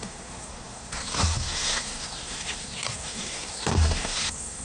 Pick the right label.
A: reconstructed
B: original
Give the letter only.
A